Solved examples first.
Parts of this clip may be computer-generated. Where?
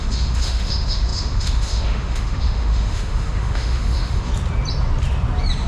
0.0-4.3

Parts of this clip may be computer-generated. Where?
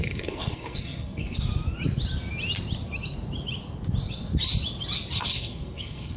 0.0-1.5; 5.2-6.2